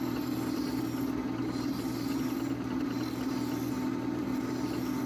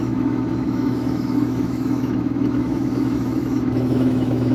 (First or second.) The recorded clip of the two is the first